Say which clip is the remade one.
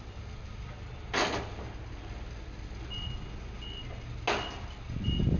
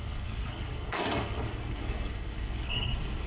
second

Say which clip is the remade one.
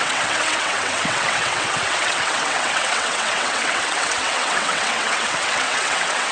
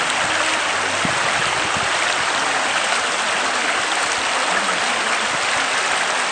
first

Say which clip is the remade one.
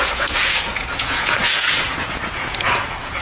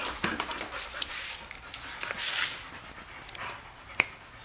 first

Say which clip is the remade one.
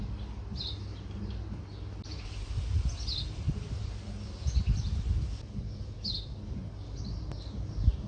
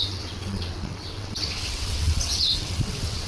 second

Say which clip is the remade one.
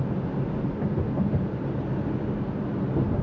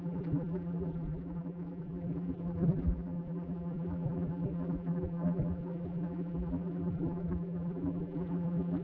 second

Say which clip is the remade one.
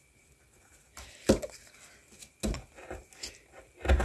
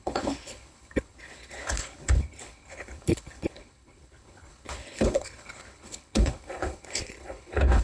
second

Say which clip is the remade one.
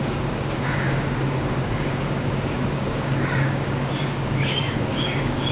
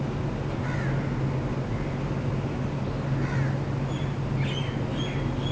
first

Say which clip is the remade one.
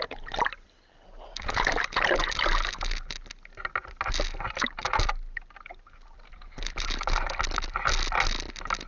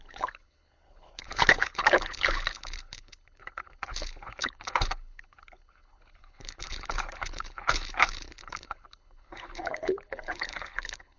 second